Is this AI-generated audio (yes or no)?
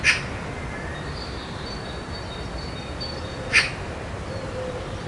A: no